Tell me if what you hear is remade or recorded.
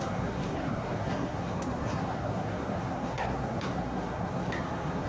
remade